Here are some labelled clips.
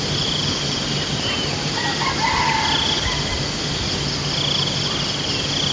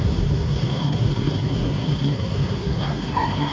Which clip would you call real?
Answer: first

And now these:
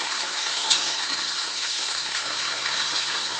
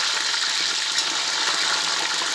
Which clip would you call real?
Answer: second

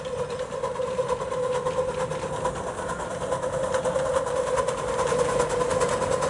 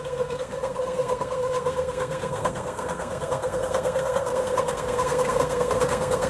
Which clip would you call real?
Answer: first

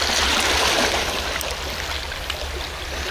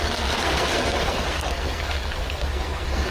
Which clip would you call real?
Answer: first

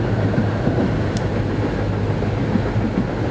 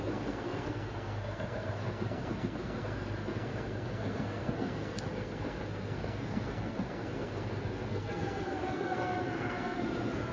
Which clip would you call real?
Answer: first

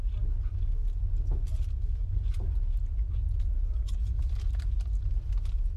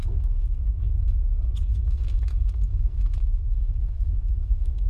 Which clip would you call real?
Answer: first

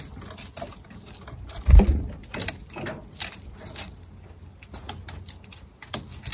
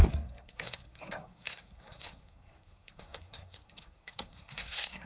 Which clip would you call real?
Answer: first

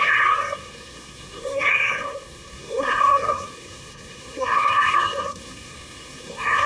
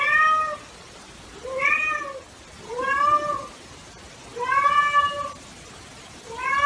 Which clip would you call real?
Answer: second